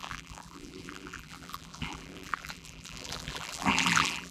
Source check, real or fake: fake